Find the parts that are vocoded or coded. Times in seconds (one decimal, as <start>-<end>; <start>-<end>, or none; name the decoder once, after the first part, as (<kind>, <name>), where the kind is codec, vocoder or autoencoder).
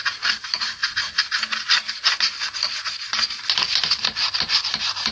none